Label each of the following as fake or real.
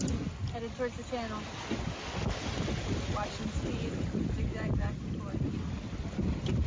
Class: real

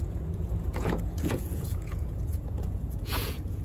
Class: fake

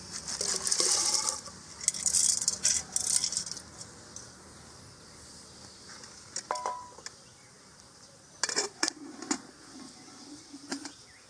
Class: real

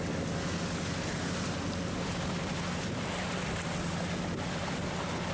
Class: real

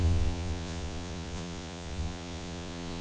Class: fake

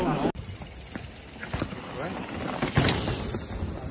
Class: real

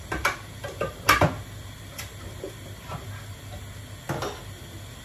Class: real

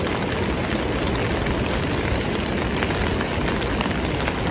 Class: real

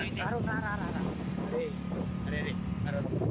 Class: real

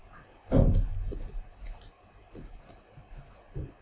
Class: real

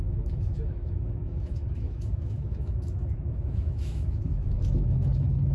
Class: fake